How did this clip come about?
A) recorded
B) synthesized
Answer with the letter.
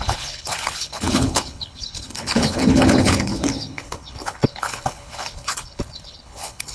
B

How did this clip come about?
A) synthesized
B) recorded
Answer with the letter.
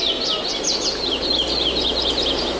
B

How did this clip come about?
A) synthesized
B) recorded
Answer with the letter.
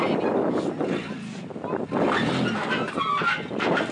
B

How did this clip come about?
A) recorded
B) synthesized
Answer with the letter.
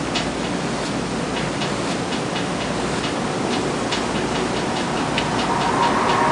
A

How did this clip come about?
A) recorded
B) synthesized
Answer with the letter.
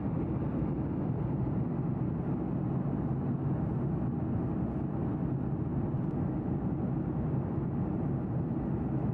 A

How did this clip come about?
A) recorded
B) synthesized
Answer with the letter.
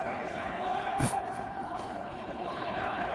B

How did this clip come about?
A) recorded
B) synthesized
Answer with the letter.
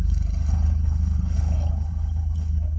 B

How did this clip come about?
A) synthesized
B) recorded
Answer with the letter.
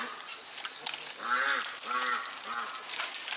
B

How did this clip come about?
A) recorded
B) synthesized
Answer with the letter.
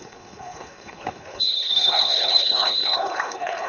B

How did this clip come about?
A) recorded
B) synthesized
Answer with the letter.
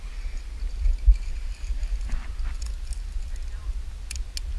A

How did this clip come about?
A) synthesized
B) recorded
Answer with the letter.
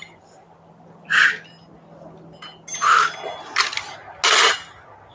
B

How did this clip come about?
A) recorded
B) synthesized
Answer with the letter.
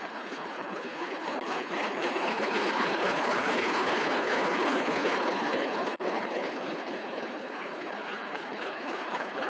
B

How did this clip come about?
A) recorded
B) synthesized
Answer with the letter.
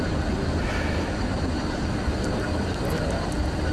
A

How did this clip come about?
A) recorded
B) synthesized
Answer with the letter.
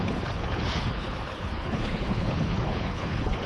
B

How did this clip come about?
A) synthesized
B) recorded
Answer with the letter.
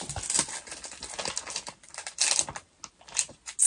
B